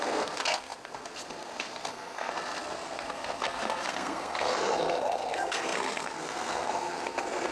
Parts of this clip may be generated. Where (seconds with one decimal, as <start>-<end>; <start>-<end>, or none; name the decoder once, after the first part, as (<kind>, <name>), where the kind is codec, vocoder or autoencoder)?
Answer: 0.0-7.5 (codec, SNAC)